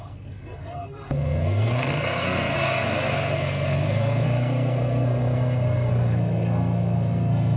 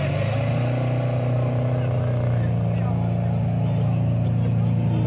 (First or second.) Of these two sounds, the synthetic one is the first